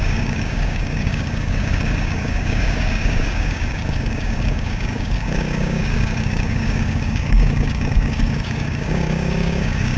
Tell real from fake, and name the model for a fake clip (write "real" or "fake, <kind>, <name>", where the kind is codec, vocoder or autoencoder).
fake, codec, DAC